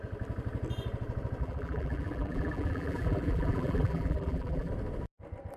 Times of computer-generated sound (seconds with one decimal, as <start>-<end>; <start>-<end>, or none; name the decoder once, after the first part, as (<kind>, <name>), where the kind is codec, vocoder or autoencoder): 1.4-4.7 (vocoder, BigVGAN v2)

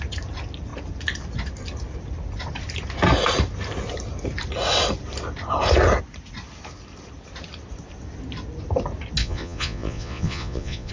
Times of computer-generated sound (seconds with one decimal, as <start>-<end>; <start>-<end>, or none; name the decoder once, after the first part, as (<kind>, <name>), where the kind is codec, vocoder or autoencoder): 9.2-10.9 (vocoder, Vocos)

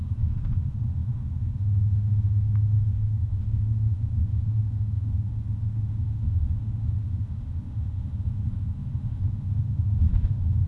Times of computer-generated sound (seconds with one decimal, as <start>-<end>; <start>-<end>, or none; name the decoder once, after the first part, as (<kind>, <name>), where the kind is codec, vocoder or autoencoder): 0.0-10.7 (autoencoder, DAC-VAE)

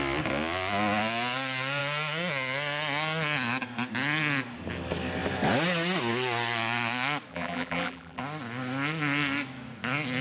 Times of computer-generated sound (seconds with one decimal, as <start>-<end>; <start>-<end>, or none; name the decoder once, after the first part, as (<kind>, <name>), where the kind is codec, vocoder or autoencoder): 7.3-8.2 (vocoder, BigVGAN v2)

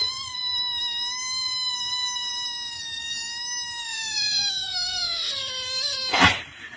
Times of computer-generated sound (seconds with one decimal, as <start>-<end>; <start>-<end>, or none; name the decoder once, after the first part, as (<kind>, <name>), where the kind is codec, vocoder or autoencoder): 3.8-5.3 (autoencoder, DAC-VAE)

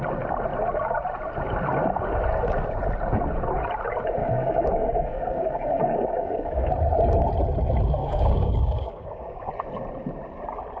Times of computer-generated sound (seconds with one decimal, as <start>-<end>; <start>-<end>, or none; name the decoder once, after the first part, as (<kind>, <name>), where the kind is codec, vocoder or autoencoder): 4.2-6.7 (codec, DAC); 8.0-9.5